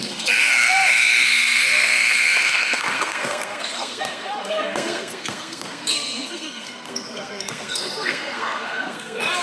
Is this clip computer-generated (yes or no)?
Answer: yes